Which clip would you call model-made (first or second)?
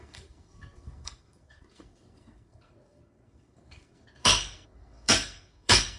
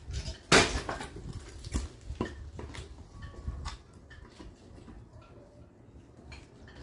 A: first